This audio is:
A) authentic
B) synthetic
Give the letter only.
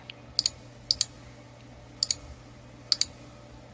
A